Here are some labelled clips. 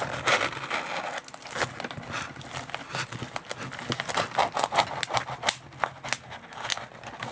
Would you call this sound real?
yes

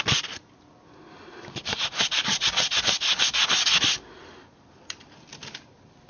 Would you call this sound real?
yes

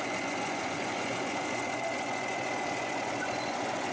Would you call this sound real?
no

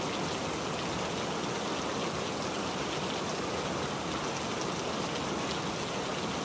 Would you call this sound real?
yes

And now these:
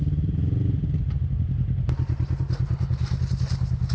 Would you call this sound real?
yes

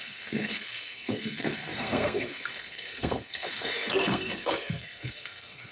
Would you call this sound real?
no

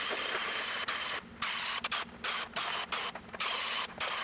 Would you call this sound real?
yes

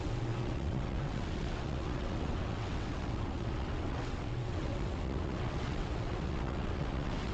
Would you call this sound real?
no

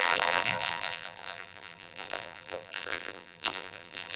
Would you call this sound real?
no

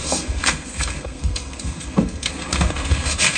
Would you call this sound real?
no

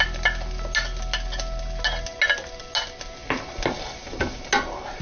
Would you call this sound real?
yes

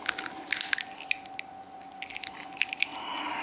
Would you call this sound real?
yes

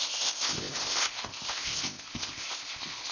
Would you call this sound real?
no